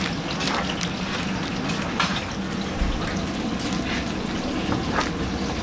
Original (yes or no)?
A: yes